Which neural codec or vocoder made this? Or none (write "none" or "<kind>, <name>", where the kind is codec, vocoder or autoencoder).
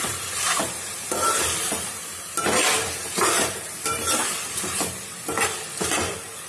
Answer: vocoder, BigVGAN v2